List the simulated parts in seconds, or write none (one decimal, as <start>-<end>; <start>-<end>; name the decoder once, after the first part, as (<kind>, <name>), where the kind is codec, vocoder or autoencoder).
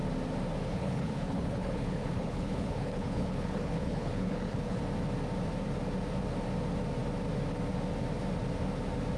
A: 0.6-4.8 (codec, HILCodec)